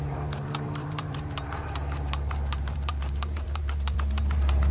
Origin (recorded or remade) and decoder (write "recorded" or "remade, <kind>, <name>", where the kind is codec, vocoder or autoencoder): remade, vocoder, BigVGAN v2